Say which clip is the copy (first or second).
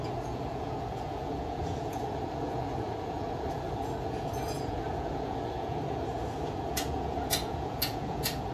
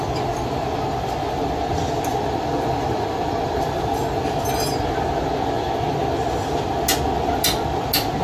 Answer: first